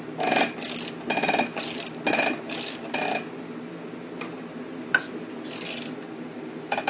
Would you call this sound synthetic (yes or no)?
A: no